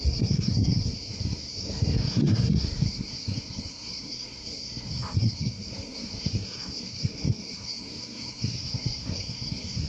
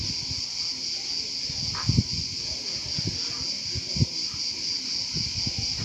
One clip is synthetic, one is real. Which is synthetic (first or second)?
first